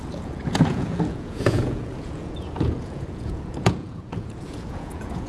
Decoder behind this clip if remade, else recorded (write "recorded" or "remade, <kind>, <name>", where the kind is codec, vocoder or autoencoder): remade, vocoder, Vocos